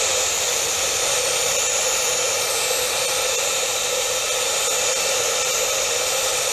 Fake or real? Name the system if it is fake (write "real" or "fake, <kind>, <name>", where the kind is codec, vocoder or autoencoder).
real